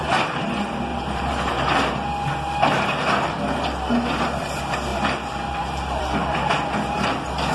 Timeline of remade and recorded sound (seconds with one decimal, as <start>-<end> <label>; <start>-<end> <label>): 0.0-0.9 recorded; 0.9-1.8 remade; 1.8-4.9 recorded; 4.9-6.0 remade; 6.0-7.5 recorded